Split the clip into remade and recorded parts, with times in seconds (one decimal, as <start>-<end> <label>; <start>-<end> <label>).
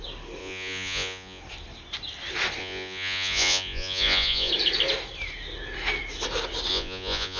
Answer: 0.0-0.4 recorded; 0.4-1.4 remade; 1.4-2.6 recorded; 2.6-4.5 remade; 4.5-6.7 recorded; 6.7-7.4 remade